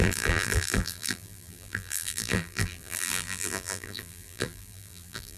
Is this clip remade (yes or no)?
yes